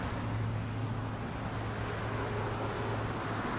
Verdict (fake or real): real